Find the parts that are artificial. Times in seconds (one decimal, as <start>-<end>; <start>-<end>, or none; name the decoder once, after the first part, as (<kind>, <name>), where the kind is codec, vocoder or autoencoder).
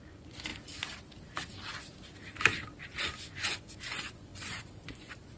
0.0-0.5 (vocoder, Vocos); 3.0-5.4